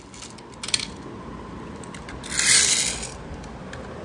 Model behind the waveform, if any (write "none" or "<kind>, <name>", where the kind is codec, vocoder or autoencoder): none